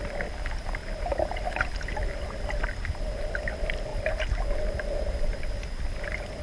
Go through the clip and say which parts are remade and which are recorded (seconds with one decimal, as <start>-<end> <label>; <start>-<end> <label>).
0.0-3.9 remade; 3.9-4.8 recorded; 4.8-6.4 remade